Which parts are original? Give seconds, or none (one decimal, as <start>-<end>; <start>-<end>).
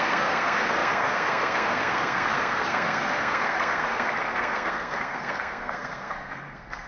none